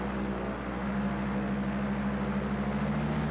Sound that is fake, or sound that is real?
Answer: real